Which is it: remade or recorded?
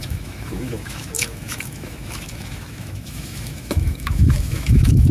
remade